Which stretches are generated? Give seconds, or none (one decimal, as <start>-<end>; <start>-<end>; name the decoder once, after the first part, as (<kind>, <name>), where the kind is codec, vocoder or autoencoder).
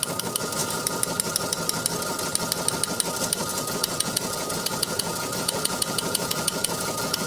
3.5-7.3 (vocoder, Vocos)